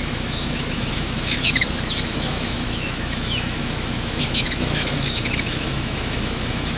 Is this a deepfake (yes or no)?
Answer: yes